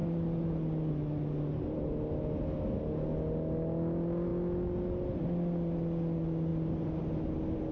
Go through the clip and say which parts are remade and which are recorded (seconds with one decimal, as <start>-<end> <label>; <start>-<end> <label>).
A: 0.0-7.7 recorded